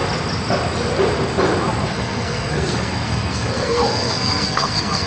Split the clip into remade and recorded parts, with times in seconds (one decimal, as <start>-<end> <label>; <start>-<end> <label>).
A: 0.0-1.9 recorded; 1.9-5.1 remade